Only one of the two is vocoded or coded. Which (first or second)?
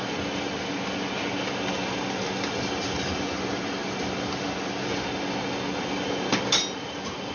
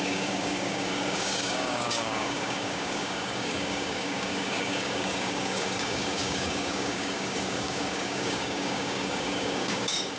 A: second